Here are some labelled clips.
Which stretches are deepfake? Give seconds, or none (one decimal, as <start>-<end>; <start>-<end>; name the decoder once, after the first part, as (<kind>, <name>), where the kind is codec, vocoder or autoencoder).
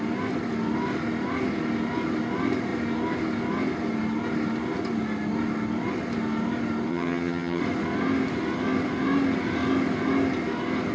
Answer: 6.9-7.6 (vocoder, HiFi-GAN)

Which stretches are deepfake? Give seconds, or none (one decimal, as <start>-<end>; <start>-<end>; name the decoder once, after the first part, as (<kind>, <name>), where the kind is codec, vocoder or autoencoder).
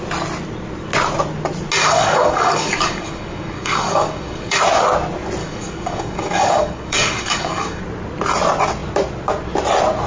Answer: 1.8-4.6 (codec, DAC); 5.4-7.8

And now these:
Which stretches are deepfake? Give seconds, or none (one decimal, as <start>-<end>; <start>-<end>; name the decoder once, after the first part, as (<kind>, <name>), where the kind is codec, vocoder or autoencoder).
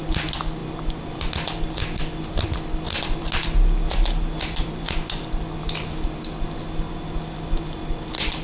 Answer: none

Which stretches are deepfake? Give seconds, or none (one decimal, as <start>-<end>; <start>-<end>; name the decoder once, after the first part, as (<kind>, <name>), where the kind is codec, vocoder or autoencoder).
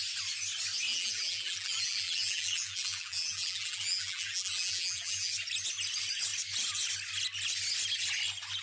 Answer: 0.9-5.3 (vocoder, BigVGAN v2)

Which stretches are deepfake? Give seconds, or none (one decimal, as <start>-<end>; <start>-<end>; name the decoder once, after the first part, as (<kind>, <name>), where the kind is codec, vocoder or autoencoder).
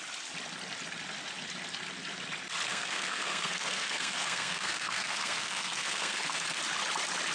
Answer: 2.7-6.6 (codec, SNAC)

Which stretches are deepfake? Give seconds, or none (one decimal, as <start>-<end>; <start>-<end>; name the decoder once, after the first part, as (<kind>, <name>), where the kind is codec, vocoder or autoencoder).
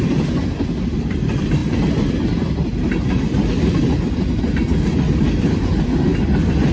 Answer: none